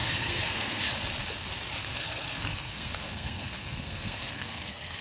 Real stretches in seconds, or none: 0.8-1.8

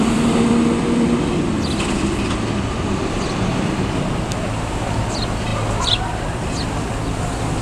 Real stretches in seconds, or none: none

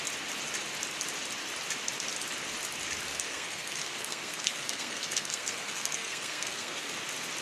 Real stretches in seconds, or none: 0.0-3.1; 6.9-7.4

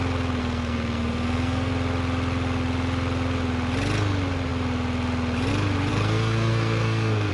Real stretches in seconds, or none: 0.0-0.4; 1.7-5.9

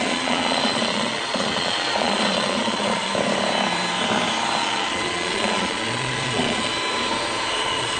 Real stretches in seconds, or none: 3.1-4.6; 6.7-7.5